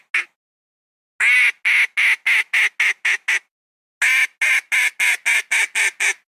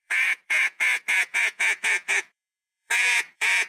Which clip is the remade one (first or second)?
second